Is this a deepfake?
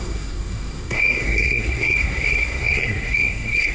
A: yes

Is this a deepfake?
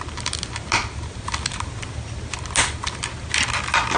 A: no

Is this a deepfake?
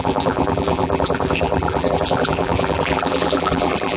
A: yes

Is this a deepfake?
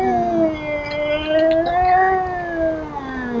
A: no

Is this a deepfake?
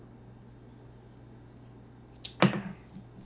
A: no